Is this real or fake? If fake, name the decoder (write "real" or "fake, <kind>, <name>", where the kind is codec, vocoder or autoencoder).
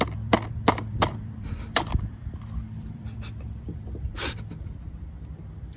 fake, vocoder, BigVGAN v2